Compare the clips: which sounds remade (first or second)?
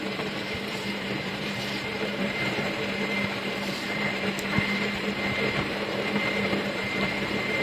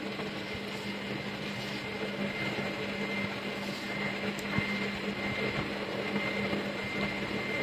first